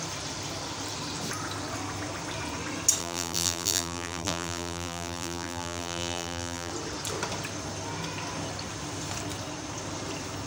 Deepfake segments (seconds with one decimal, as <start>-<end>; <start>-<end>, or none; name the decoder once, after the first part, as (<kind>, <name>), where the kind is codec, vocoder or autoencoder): 3.0-6.7 (vocoder, BigVGAN v2)